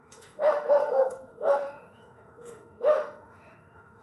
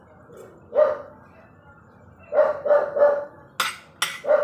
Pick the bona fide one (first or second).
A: second